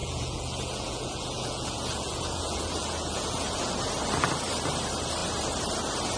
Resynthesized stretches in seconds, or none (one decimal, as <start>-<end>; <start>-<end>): 0.0-3.7